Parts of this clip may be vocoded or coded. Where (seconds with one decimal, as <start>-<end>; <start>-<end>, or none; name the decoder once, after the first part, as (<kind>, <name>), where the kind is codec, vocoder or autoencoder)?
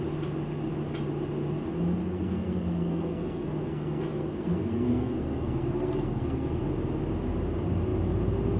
2.0-6.6 (codec, SNAC)